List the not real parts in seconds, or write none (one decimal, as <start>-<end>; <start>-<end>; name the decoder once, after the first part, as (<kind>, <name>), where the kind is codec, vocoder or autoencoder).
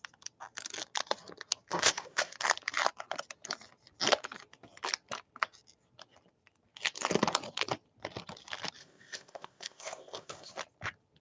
1.7-2.3 (codec, ZipCodec); 8.8-10.5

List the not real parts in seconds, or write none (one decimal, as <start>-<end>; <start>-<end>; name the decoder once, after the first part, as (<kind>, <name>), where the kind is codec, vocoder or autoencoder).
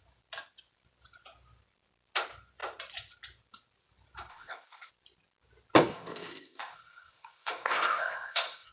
4.3-4.9 (codec, ZipCodec); 5.9-8.7